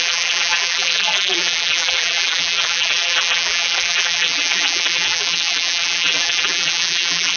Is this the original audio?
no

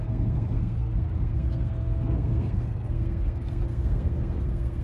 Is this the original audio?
no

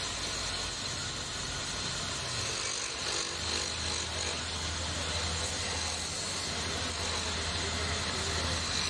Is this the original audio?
yes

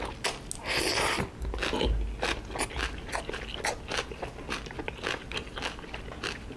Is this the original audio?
yes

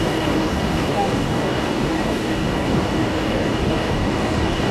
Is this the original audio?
no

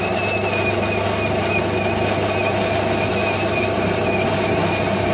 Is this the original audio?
yes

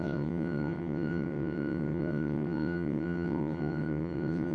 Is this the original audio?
no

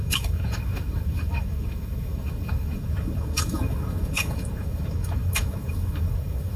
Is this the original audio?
no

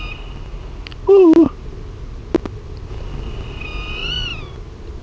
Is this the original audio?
yes